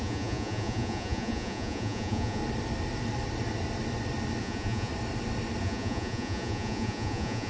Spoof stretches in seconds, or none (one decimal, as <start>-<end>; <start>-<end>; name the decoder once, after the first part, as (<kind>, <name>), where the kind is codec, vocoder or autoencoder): 0.0-2.4 (vocoder, Vocos); 4.4-4.9; 5.6-7.5